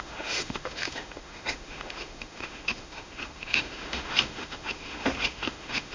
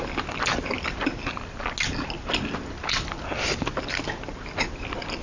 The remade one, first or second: first